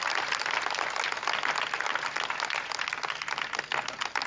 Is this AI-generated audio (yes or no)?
no